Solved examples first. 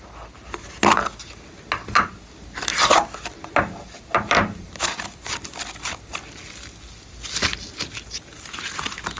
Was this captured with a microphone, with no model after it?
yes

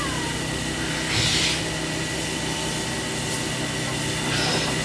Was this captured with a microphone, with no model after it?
yes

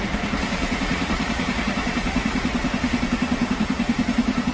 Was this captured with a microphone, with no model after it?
no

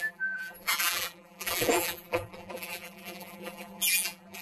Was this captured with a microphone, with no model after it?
no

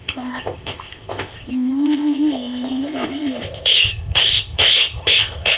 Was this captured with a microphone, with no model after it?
no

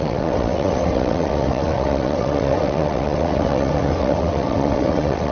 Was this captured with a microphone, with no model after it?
no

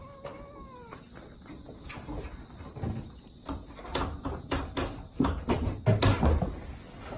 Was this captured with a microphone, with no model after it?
yes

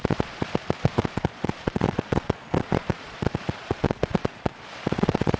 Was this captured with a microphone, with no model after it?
no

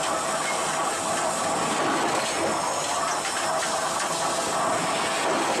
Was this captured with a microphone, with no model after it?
yes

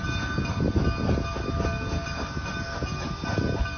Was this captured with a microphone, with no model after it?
yes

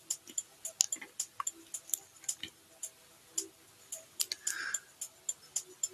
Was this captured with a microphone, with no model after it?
yes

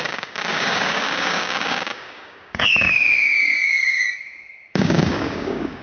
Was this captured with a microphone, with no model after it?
no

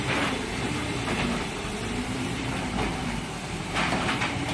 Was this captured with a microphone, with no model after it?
no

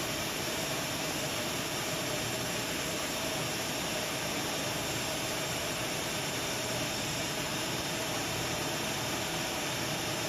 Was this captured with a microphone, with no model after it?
no